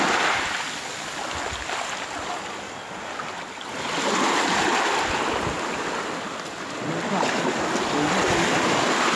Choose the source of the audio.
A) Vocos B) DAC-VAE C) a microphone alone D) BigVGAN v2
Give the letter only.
C